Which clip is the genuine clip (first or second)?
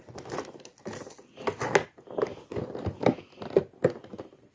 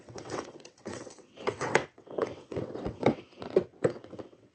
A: first